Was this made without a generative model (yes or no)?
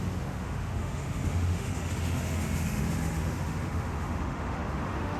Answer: no